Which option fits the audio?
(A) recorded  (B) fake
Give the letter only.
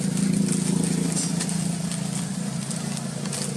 A